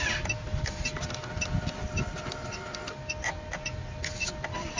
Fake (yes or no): no